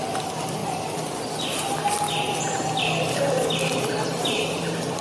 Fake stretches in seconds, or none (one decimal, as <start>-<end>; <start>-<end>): none